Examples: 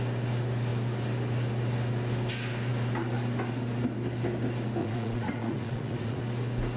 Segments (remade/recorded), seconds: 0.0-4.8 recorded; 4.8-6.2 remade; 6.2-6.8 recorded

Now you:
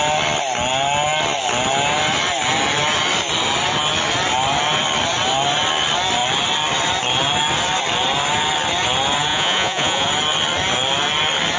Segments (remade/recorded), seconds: 0.0-9.3 recorded; 9.3-10.1 remade; 10.1-11.6 recorded

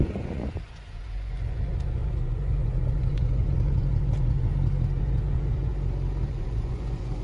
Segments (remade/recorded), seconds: 0.0-4.5 remade; 4.5-5.0 recorded; 5.0-5.7 remade; 5.7-6.3 recorded; 6.3-7.2 remade

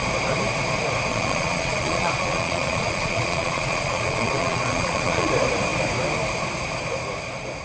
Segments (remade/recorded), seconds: 0.0-1.1 recorded; 1.1-5.3 remade; 5.3-7.6 recorded

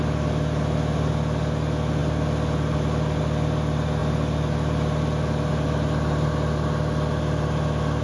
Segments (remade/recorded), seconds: 0.0-8.0 recorded

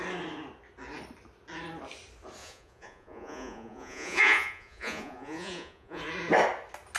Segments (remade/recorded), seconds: 0.0-2.4 recorded; 2.4-6.0 remade; 6.0-7.0 recorded

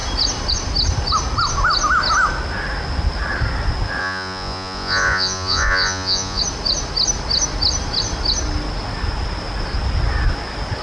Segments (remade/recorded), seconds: 0.0-4.0 recorded; 4.0-6.4 remade; 6.4-10.8 recorded